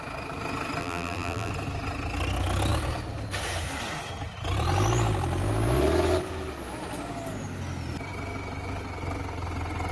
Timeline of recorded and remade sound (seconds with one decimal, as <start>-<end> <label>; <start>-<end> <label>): 0.0-0.8 recorded; 0.8-1.5 remade; 1.5-9.9 recorded